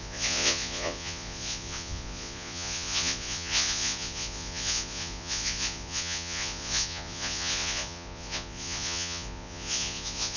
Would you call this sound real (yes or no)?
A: no